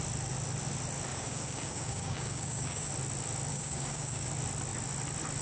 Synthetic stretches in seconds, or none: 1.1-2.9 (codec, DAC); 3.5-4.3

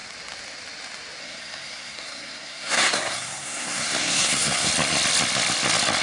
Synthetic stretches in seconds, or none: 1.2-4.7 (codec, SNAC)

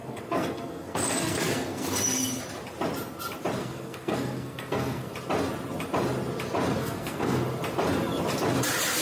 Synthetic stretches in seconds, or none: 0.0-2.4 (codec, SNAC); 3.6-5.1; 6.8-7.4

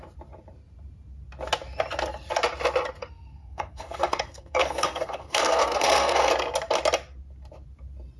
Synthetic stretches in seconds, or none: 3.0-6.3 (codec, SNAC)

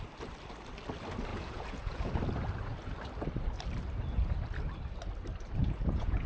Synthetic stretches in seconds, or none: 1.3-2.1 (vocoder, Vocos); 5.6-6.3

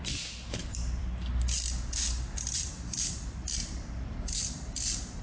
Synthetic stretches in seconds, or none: none

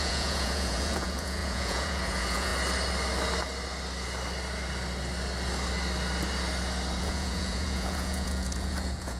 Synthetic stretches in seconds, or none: 0.0-2.5 (vocoder, Vocos); 7.0-9.2

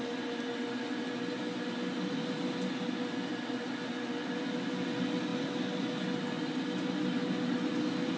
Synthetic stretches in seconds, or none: none